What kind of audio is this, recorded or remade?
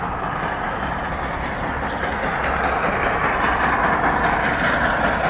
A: recorded